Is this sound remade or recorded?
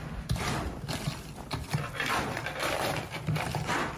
recorded